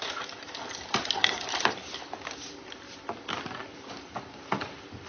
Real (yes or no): yes